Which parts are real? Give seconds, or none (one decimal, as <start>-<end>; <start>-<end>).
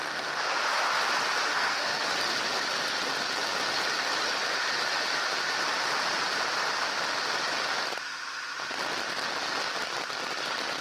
0.0-1.5; 2.0-10.8